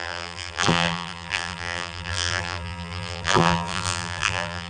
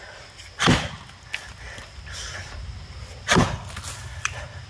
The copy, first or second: first